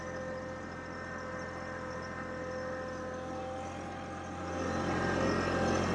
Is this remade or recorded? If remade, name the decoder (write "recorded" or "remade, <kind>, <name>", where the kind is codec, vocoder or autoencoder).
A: recorded